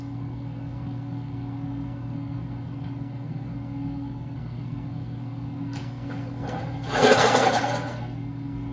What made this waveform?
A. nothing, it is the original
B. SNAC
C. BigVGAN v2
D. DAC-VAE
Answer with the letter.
B